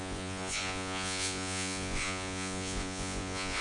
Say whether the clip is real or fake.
fake